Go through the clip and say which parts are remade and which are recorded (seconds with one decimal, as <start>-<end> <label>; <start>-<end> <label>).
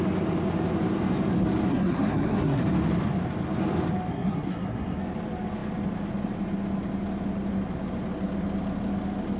0.0-1.7 recorded; 1.7-2.6 remade; 2.6-4.1 recorded; 4.1-5.0 remade; 5.0-9.4 recorded